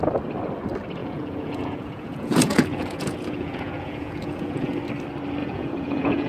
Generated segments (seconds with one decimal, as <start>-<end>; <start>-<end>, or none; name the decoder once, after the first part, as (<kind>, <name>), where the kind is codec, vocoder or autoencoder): 1.0-4.8 (vocoder, Vocos); 5.4-6.3